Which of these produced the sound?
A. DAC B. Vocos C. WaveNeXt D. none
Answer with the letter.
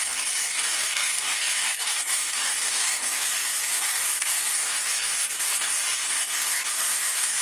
A